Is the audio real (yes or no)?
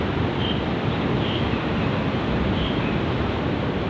yes